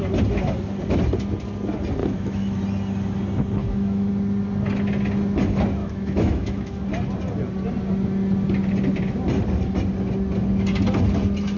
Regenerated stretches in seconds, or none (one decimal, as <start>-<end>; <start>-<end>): 2.0-2.6; 3.6-4.1; 5.8-6.8

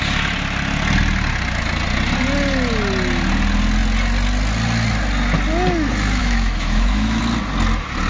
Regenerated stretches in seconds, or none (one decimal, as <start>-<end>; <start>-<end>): 6.2-7.2

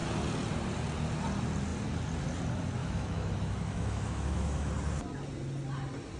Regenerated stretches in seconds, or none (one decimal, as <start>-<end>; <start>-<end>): 2.8-4.7

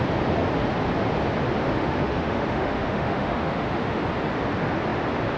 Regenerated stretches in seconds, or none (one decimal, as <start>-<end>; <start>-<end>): 1.7-4.0

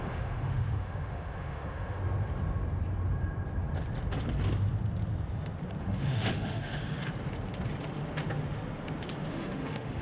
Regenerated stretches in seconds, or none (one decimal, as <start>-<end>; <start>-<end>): 0.0-2.0; 5.8-7.0; 9.3-10.0